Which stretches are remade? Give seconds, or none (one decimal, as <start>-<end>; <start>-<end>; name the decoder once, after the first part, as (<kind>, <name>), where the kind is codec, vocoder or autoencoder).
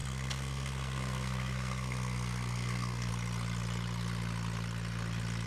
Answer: 0.0-3.1 (codec, SNAC)